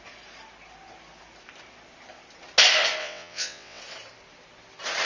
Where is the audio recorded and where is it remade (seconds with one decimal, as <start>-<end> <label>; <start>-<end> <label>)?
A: 0.0-3.0 recorded; 3.0-3.8 remade; 3.8-5.1 recorded